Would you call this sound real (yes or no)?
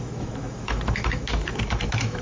no